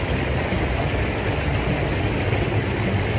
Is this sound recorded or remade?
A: recorded